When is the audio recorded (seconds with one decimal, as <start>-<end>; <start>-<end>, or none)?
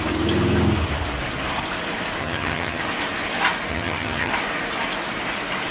0.0-2.2; 2.8-3.7; 4.3-5.7